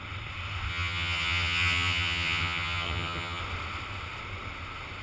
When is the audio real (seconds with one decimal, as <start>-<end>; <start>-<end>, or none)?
0.0-0.7; 3.4-5.0